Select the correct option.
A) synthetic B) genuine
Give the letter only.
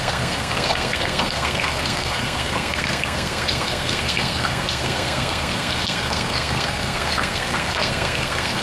A